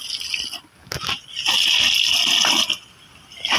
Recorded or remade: recorded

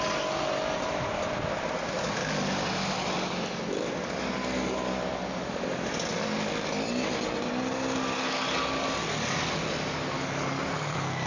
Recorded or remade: recorded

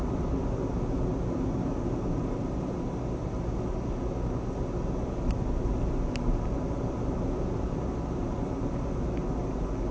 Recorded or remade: recorded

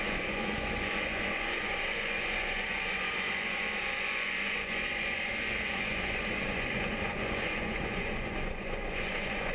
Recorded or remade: remade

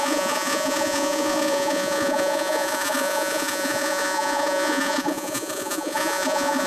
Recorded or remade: remade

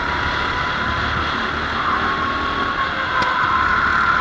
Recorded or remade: recorded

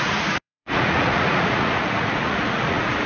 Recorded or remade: remade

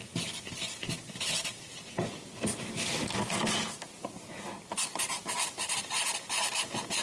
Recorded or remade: recorded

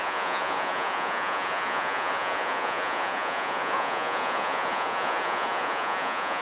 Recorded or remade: remade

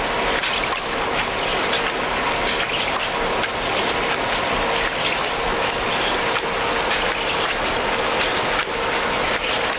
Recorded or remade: recorded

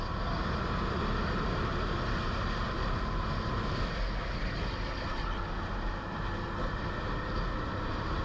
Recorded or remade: recorded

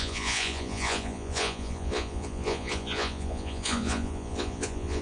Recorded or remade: remade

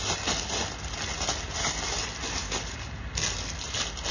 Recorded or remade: recorded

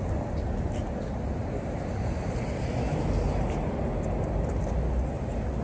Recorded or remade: recorded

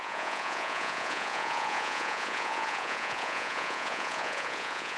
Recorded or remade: remade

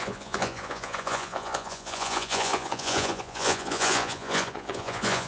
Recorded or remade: remade